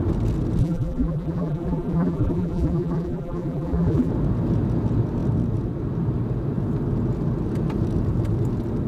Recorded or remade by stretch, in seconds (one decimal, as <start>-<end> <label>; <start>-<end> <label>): 0.0-0.6 recorded; 0.6-4.1 remade; 4.1-8.9 recorded